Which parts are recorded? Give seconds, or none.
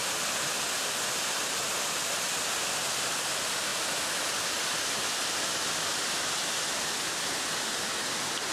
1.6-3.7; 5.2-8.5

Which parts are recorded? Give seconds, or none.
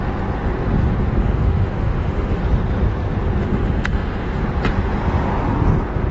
0.0-1.2; 2.4-3.4; 4.4-6.1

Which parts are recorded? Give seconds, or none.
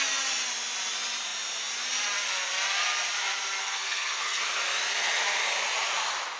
0.0-3.6; 4.4-6.4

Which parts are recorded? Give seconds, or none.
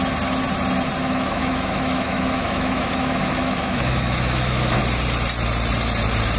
0.0-1.0; 4.8-6.4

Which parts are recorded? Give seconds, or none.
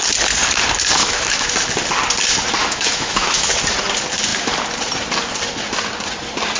0.0-1.0; 1.5-2.6; 3.5-6.6